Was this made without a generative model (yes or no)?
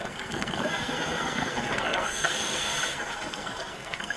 no